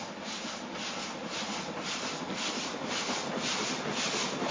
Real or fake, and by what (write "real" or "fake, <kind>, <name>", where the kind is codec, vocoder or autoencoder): real